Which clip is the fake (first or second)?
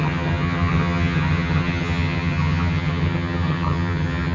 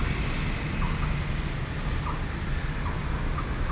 first